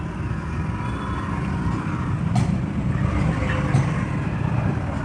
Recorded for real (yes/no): no